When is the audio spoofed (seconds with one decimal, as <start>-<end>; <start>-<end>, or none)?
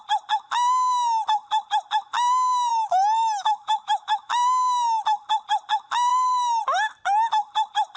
2.7-4.3; 6.1-6.6